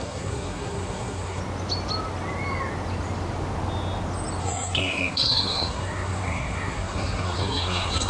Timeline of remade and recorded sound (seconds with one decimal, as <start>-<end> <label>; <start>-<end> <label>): 0.0-1.4 remade; 1.4-4.4 recorded; 4.4-8.1 remade